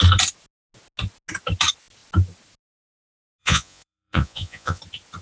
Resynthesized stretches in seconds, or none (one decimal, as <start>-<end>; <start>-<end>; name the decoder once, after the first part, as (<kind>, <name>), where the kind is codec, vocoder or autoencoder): 3.4-4.8 (vocoder, Vocos)